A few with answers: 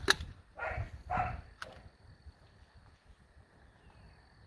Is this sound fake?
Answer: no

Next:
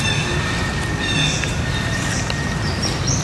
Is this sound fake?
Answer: no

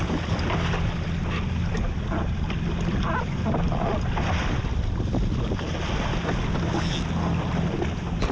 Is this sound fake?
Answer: no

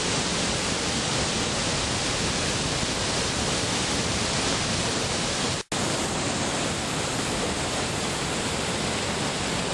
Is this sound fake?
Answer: no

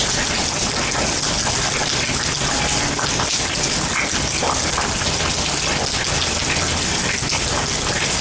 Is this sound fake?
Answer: no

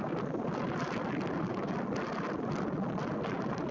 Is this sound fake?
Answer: no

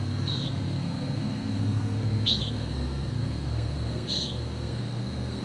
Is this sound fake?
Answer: yes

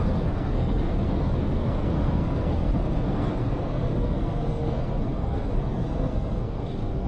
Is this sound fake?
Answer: yes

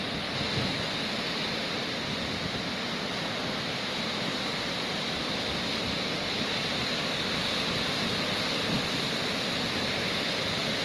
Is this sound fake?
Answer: no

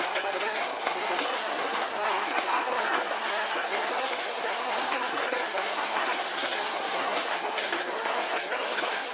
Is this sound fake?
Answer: yes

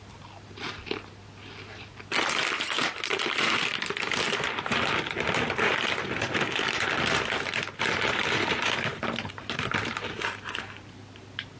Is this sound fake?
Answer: no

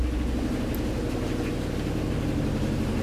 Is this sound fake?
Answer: no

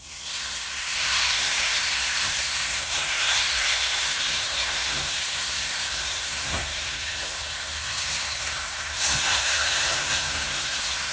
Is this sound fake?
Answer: yes